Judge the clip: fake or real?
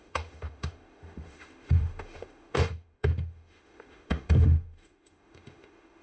fake